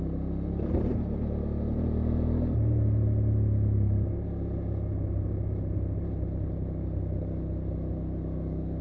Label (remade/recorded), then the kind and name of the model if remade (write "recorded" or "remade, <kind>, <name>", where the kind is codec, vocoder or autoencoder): recorded